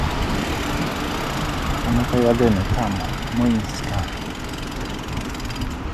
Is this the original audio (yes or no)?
yes